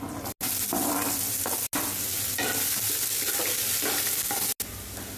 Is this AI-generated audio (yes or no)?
no